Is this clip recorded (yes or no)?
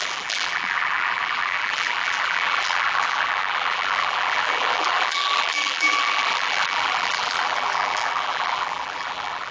no